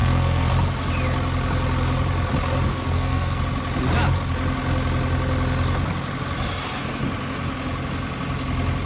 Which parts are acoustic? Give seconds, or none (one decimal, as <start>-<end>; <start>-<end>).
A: 0.5-2.7; 3.4-8.9